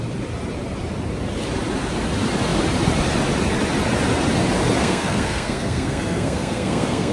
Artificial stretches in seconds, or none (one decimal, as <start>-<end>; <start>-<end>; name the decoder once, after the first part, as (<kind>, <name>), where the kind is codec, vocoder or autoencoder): 4.8-7.1 (codec, SNAC)